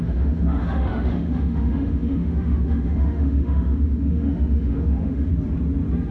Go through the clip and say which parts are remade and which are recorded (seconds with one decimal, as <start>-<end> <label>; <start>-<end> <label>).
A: 0.0-5.3 remade; 5.3-6.1 recorded